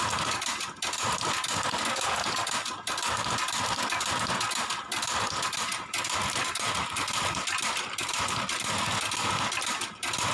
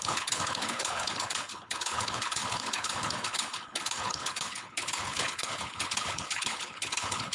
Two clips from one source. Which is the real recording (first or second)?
first